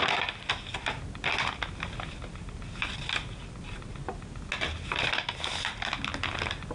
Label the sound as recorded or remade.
recorded